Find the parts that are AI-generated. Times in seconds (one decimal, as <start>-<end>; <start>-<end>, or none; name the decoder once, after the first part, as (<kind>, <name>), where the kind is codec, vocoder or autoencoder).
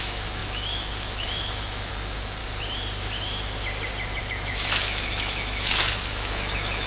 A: 0.0-2.4 (autoencoder, DAC-VAE); 4.2-6.9